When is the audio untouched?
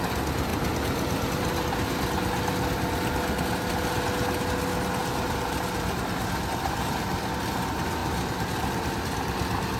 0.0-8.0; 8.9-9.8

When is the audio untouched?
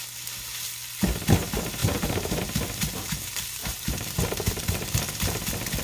0.0-1.8; 2.4-3.6; 4.5-5.8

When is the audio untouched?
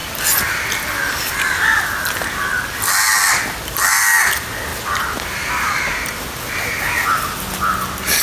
0.0-4.7; 5.5-8.2